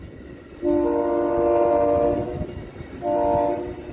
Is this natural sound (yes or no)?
yes